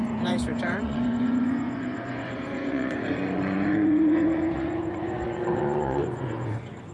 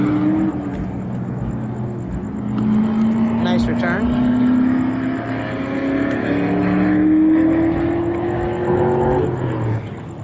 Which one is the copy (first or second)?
first